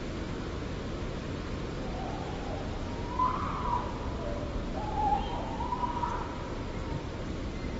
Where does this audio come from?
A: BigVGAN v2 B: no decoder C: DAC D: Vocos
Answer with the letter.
B